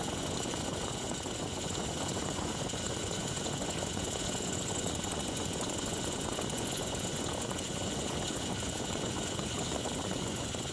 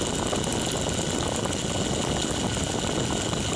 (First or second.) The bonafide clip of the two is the second